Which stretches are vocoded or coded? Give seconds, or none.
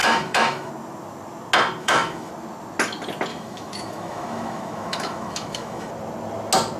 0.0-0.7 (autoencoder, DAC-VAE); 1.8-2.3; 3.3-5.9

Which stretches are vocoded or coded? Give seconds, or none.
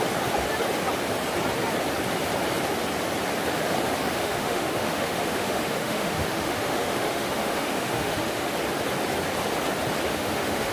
4.1-8.5 (autoencoder, DAC-VAE); 10.1-10.7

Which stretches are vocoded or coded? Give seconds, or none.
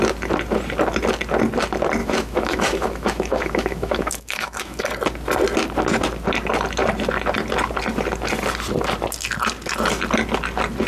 2.0-4.9 (autoencoder, DAC-VAE)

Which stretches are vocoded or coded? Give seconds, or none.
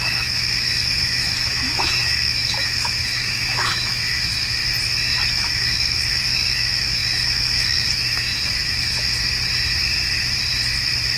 0.0-4.6 (autoencoder, DAC-VAE); 5.3-9.1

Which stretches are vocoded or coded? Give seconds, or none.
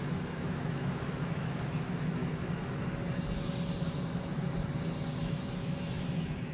0.0-2.2 (autoencoder, DAC-VAE); 5.2-6.5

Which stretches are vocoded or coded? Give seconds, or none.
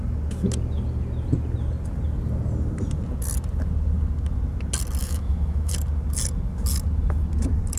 5.0-5.7 (autoencoder, DAC-VAE)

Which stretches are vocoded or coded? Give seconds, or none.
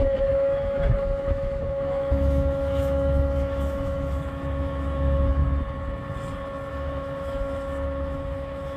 0.0-5.4 (autoencoder, DAC-VAE); 6.7-8.8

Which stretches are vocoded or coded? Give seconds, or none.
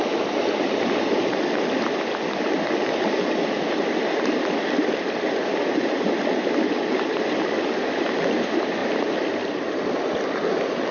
none